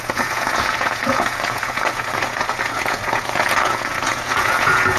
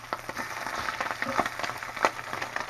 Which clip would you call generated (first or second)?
first